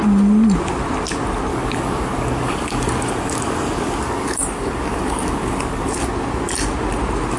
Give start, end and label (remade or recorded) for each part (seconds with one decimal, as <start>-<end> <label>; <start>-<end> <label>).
0.0-1.5 recorded; 1.5-5.9 remade; 5.9-7.4 recorded